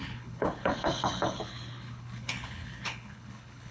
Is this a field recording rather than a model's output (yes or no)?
no